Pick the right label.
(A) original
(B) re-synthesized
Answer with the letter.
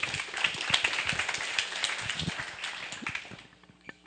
A